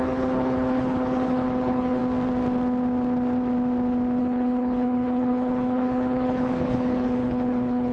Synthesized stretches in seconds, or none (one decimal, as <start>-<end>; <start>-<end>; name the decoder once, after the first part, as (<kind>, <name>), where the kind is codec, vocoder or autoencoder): 0.0-2.0 (codec, HILCodec); 4.2-7.9